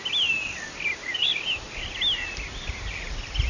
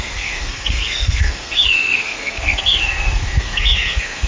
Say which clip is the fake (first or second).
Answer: second